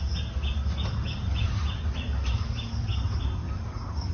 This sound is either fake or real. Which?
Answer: real